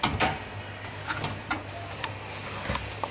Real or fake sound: real